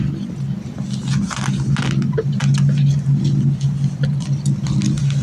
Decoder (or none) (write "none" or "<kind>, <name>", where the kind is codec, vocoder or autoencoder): none